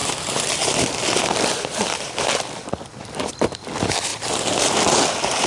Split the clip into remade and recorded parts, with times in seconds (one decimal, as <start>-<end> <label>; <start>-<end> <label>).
0.0-3.3 remade; 3.3-4.1 recorded; 4.1-5.5 remade